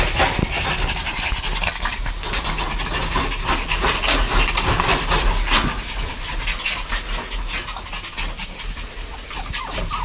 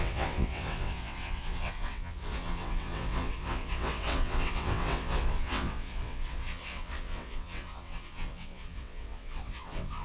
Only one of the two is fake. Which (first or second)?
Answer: second